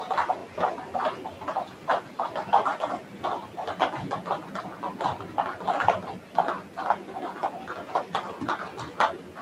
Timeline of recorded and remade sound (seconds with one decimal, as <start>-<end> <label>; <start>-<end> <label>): 0.0-9.4 recorded